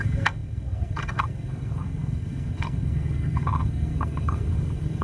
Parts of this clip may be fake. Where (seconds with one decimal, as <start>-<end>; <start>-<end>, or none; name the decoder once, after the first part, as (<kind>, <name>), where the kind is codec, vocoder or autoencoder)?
0.0-5.0 (codec, SNAC)